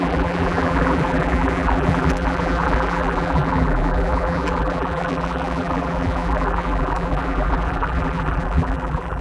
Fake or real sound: fake